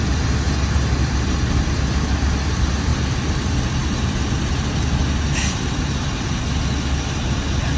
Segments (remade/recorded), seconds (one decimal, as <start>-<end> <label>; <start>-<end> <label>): 0.0-7.8 recorded